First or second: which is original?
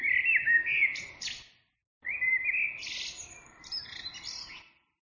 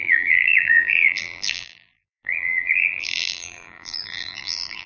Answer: first